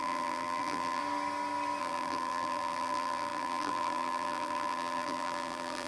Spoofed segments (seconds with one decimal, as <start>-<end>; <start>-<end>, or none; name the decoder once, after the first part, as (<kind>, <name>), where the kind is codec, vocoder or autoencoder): 0.0-1.0 (vocoder, BigVGAN v2); 1.8-5.9